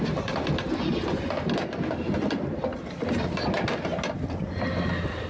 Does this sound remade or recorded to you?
recorded